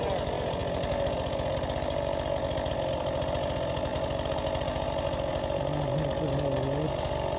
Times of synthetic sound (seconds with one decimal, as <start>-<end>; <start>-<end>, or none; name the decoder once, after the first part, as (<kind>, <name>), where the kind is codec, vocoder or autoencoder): none